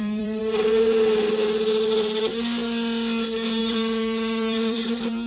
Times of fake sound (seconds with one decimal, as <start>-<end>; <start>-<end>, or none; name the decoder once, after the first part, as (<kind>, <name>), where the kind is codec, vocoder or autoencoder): 0.0-0.4 (vocoder, BigVGAN v2); 3.6-5.3